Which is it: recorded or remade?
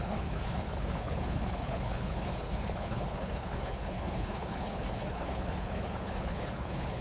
remade